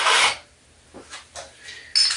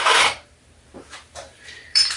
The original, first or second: first